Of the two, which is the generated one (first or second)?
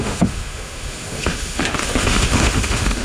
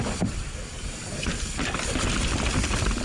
first